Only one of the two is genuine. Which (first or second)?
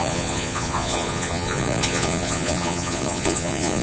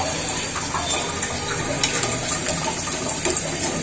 second